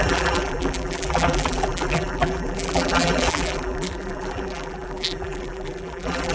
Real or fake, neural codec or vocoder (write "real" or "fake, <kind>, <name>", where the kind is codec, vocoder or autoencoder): fake, vocoder, BigVGAN v2